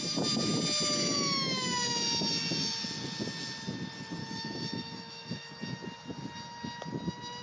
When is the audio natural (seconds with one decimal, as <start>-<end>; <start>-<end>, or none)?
0.0-4.2; 5.5-7.4